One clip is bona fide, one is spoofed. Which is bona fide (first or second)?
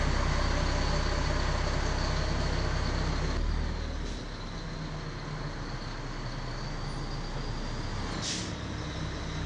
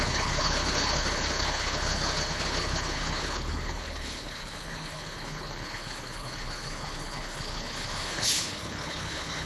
first